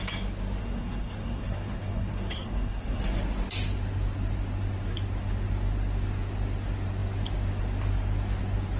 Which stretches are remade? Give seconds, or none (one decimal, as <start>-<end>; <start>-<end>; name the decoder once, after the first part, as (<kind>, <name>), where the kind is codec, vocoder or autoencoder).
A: 0.6-3.0 (codec, SNAC)